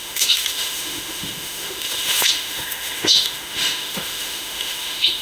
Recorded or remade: remade